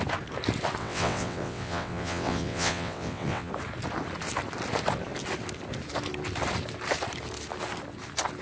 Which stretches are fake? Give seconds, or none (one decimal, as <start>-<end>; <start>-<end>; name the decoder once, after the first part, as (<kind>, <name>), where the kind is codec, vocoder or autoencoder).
0.8-3.5 (vocoder, WaveNeXt)